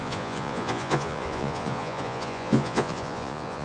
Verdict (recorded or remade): remade